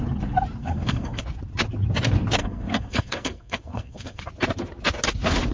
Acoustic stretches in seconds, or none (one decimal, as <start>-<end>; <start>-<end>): 0.0-0.6; 1.2-2.4; 4.2-5.5